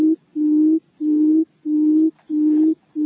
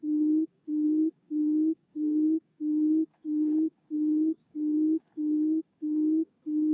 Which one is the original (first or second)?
first